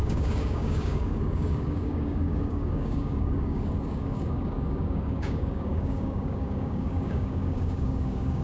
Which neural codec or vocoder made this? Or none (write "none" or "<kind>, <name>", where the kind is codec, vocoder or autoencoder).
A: codec, DAC